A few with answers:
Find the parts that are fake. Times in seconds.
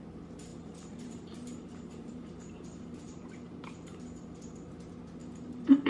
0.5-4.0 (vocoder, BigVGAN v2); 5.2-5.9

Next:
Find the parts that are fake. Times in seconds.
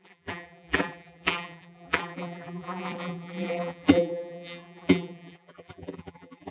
0.0-6.5 (vocoder, BigVGAN v2)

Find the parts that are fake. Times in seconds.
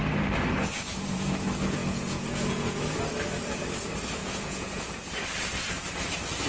1.8-2.8 (vocoder, Vocos); 4.2-5.1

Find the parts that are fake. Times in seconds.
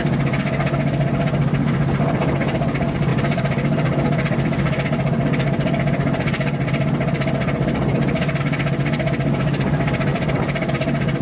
3.1-8.4 (vocoder, BigVGAN v2); 10.1-10.7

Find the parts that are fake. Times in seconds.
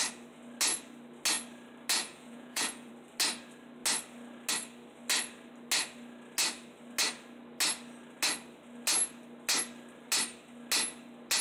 2.0-2.9 (vocoder, Vocos)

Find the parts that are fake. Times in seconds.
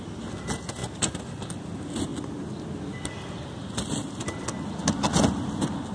none